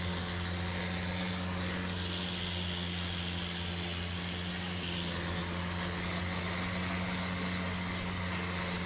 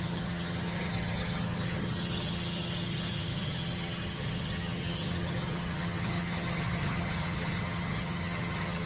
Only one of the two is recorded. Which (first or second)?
first